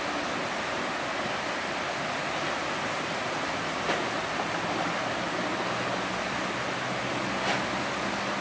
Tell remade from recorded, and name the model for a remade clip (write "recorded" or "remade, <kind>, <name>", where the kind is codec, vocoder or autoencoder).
recorded